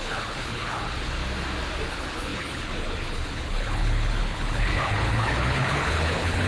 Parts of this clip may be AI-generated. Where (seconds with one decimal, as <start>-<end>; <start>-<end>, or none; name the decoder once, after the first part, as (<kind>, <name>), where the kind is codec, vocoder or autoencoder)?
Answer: 0.0-1.2 (codec, HILCodec); 1.9-6.5